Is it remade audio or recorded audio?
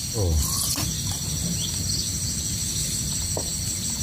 recorded